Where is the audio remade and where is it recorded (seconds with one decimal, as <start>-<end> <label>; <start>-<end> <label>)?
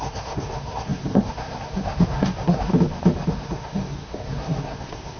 0.0-2.7 remade; 2.7-3.3 recorded; 3.3-5.2 remade